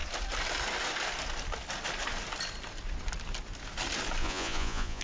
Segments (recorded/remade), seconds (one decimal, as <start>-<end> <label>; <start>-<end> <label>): 0.0-4.2 recorded; 4.2-5.0 remade